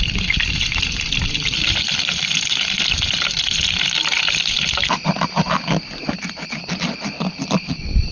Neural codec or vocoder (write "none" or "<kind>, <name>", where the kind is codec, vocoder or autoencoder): none